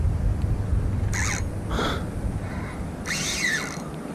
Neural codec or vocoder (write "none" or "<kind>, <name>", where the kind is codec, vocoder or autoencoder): none